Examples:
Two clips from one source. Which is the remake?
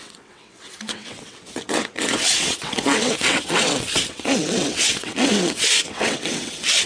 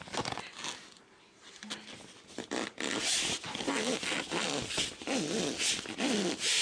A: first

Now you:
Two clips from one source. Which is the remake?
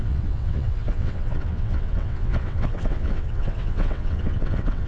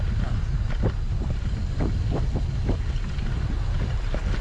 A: first